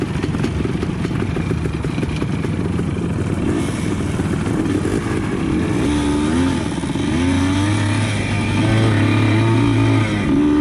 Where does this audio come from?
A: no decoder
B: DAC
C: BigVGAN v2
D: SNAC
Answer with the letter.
A